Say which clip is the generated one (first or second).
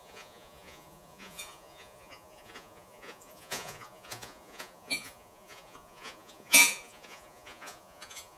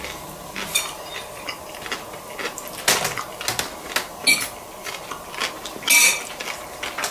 first